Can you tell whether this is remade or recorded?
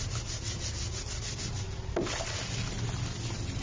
recorded